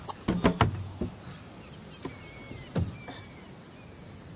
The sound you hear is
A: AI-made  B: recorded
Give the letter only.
B